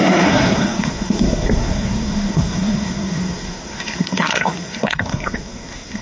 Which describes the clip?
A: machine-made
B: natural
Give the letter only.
A